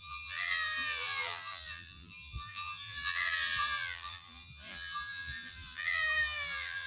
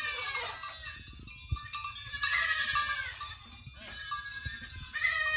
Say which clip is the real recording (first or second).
second